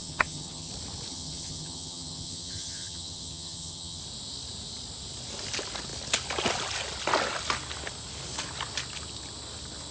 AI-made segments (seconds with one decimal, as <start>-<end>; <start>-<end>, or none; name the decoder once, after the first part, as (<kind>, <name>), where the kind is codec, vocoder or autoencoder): 0.0-0.7 (vocoder, HiFi-GAN); 1.1-4.0